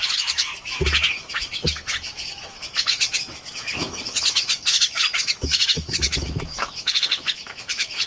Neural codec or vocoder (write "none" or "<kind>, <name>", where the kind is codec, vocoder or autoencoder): autoencoder, DAC-VAE